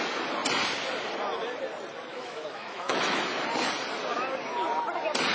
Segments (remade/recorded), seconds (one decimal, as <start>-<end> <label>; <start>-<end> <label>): 0.0-2.1 recorded; 2.1-3.2 remade; 3.2-5.3 recorded

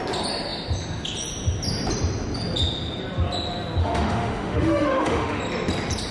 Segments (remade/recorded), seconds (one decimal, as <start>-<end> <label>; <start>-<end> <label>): 0.0-3.8 recorded; 3.8-5.4 remade; 5.4-6.1 recorded

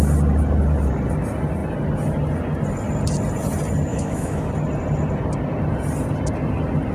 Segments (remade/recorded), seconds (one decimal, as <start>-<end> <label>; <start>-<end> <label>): 0.0-3.9 recorded; 3.9-4.5 remade; 4.5-6.9 recorded

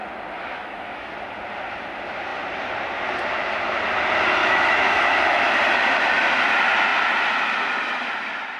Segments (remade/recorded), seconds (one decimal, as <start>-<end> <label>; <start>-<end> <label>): 0.0-0.4 recorded; 0.4-1.1 remade; 1.1-4.4 recorded; 4.4-5.5 remade; 5.5-8.6 recorded

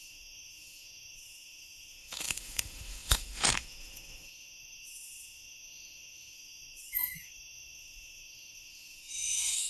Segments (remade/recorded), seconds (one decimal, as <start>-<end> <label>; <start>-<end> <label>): 0.0-9.7 remade